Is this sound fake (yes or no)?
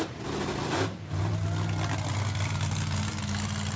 no